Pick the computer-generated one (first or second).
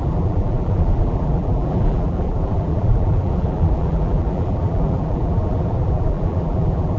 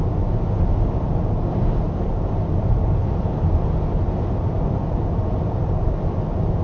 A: first